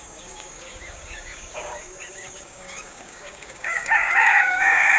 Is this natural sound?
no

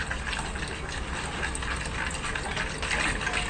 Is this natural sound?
yes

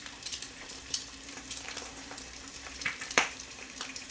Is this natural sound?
no